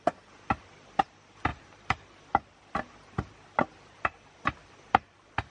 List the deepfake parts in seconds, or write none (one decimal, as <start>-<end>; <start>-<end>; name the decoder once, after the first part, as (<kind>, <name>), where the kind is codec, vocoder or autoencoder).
1.5-4.7 (vocoder, BigVGAN v2)

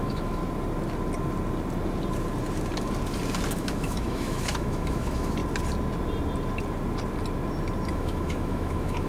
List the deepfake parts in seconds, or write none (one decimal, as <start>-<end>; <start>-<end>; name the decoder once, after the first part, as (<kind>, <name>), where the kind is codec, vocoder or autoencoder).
0.0-0.4 (autoencoder, DAC-VAE); 3.5-5.4; 7.9-9.1

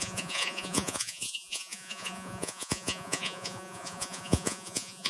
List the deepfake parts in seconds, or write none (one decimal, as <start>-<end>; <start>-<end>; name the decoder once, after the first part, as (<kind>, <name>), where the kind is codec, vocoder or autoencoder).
0.0-5.1 (vocoder, Vocos)